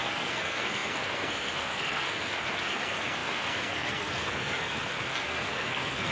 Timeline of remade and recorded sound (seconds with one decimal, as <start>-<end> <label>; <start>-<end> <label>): 0.0-6.1 remade